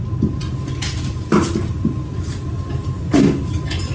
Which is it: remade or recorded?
recorded